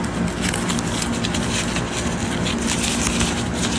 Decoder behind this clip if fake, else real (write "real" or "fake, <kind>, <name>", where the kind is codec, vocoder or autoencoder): real